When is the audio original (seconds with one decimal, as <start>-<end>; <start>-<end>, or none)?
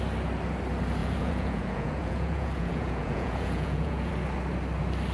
0.0-1.0; 4.1-5.1